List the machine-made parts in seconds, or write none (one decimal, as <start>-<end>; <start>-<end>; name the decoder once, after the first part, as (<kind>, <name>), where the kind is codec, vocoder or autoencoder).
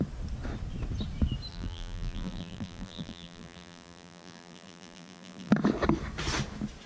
1.5-5.5 (vocoder, BigVGAN v2)